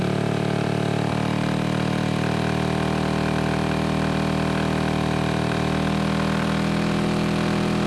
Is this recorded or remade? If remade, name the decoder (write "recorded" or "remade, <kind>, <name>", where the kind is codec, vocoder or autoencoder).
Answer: remade, vocoder, BigVGAN v2